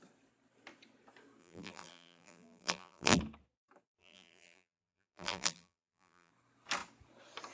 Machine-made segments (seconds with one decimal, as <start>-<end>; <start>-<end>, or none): 1.4-3.2; 4.0-6.3